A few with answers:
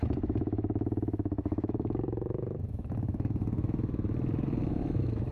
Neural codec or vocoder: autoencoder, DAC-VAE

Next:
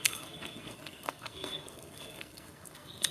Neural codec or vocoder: codec, SNAC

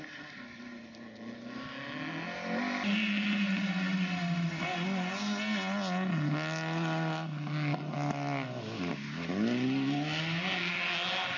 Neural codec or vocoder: none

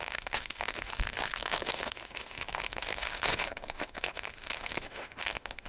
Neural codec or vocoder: autoencoder, DAC-VAE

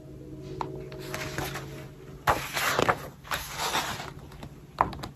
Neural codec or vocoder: none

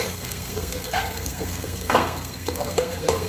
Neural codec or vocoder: codec, SNAC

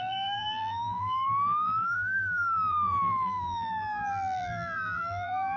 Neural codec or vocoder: vocoder, BigVGAN v2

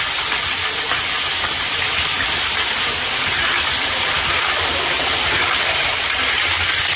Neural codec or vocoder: none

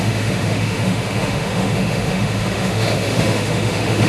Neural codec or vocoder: autoencoder, DAC-VAE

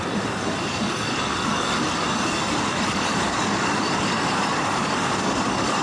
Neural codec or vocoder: codec, DAC